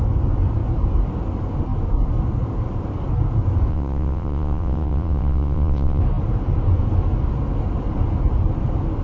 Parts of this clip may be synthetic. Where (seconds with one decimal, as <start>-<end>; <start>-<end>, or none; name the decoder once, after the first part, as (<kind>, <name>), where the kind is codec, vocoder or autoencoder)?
3.7-6.0 (vocoder, WaveNeXt)